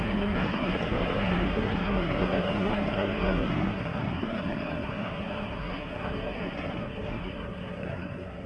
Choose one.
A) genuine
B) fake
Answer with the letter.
B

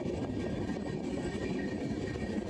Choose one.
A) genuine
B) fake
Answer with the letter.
A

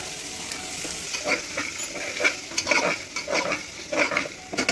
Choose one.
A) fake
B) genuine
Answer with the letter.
B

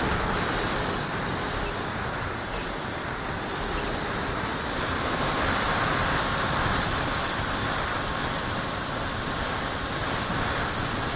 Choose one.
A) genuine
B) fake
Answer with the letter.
B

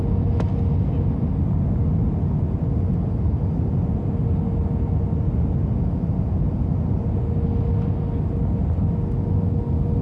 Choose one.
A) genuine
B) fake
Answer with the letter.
A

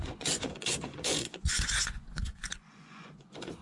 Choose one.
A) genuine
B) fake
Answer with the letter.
B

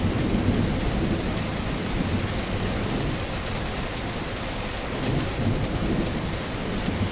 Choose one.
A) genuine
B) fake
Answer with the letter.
A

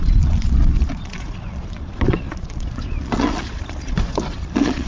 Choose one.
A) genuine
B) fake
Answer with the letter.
B